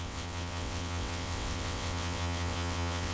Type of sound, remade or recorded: remade